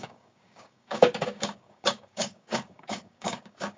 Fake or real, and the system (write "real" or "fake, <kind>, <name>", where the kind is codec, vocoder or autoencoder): fake, codec, DAC